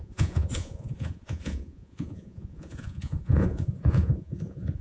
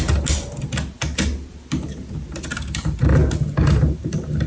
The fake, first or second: first